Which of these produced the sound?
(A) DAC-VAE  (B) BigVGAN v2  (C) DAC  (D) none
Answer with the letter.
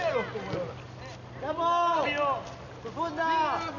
D